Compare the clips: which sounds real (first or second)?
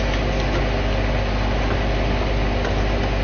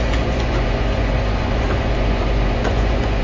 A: first